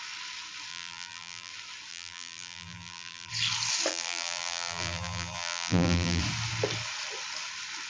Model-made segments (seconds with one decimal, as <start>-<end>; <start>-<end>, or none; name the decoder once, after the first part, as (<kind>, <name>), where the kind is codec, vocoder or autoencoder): 0.7-1.5 (vocoder, BigVGAN v2); 1.9-3.3; 3.9-6.2

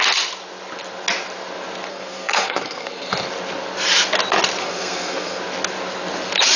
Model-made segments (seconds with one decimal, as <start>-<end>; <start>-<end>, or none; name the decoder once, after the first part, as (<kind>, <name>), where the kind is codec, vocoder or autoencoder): 1.9-3.1 (codec, SNAC); 4.6-5.4

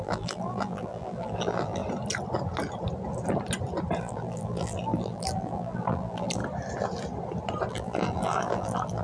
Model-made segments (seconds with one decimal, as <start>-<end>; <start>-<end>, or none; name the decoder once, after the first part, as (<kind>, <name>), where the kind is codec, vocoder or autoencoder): 0.0-1.8 (vocoder, BigVGAN v2); 4.0-6.4; 7.7-9.0

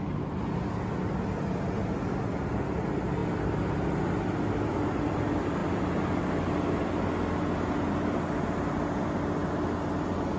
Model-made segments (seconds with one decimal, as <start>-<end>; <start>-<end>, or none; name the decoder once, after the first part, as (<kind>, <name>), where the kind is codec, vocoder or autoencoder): none

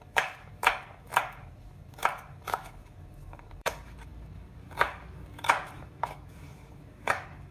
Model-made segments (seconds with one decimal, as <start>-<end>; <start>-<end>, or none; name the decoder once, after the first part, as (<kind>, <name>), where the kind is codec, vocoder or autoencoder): 0.0-7.5 (codec, DAC)